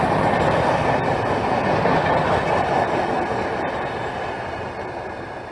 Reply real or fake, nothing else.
real